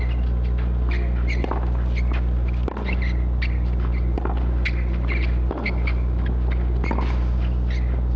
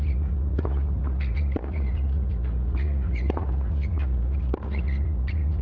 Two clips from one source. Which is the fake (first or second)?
second